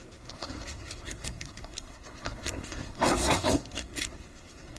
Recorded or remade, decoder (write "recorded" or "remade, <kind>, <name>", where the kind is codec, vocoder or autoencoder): remade, codec, SNAC